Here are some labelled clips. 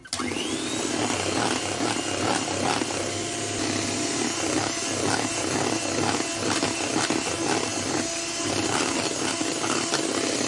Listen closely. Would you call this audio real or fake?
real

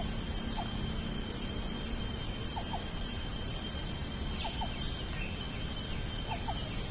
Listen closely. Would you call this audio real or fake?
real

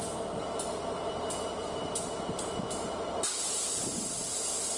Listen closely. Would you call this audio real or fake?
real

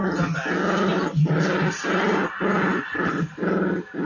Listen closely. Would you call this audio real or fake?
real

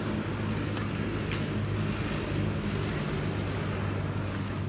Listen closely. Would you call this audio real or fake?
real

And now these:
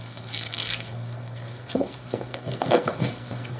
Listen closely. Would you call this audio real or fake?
fake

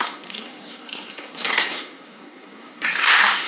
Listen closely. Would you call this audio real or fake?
fake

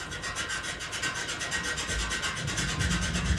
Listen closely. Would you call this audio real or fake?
real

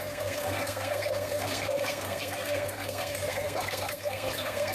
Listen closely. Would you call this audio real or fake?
fake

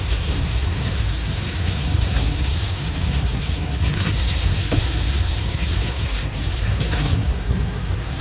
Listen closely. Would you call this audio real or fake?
fake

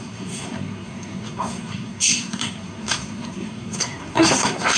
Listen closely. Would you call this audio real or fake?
fake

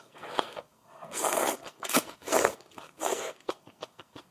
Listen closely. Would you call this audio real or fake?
fake